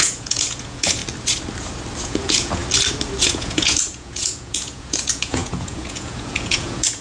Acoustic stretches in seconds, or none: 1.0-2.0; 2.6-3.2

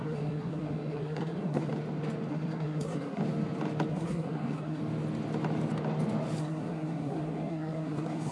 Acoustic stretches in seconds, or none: 1.7-2.3; 3.2-3.9; 4.8-6.4

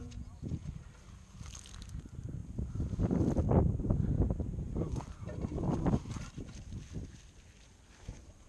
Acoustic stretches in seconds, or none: 0.7-8.5

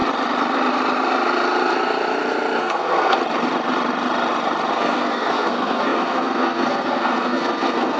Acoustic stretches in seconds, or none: 0.0-2.6; 3.2-4.7